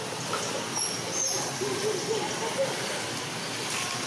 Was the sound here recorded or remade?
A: recorded